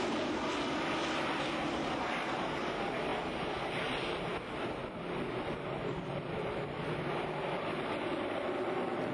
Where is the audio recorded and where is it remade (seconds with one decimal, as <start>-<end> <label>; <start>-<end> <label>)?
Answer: 0.0-9.1 recorded

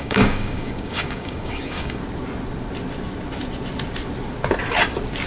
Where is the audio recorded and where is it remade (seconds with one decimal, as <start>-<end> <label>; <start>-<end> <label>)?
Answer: 0.0-2.0 remade; 2.0-5.3 recorded

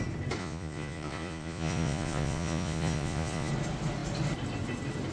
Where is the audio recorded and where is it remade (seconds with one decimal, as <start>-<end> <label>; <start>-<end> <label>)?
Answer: 0.0-0.4 recorded; 0.4-3.5 remade; 3.5-5.1 recorded

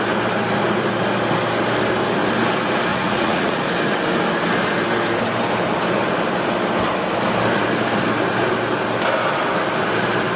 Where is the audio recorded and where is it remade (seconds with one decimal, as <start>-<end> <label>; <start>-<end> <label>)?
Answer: 0.0-2.9 recorded; 2.9-3.6 remade; 3.6-10.4 recorded